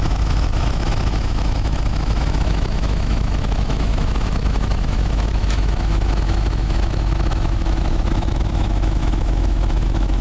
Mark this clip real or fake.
fake